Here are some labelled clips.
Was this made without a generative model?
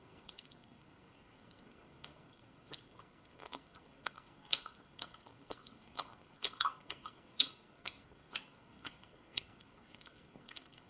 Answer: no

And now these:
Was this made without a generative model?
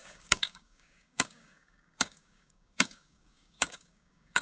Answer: no